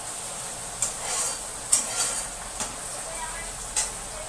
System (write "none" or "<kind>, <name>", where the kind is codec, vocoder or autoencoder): none